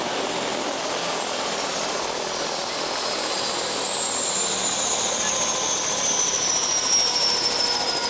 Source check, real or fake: real